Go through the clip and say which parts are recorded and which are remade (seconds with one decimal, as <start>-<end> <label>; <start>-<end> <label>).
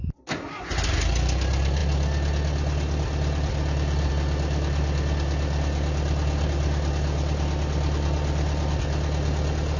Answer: 0.0-9.8 recorded